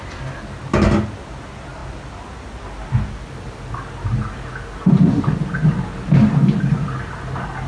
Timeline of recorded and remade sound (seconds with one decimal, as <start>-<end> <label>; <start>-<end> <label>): 0.0-7.7 recorded